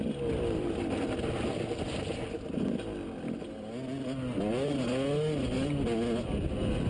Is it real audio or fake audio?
real